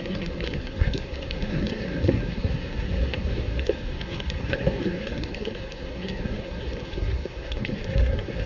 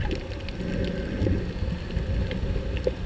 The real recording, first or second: second